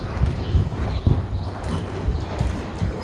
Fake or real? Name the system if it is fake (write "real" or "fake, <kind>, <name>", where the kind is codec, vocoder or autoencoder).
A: real